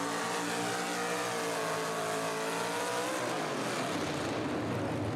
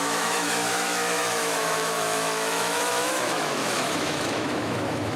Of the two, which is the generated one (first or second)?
second